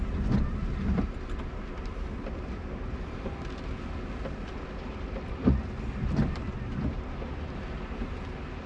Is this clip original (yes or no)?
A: no